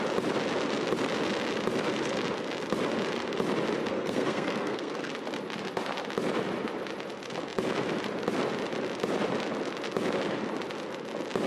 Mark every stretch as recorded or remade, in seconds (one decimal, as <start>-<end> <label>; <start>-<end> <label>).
0.0-3.9 recorded; 3.9-5.1 remade; 5.1-11.5 recorded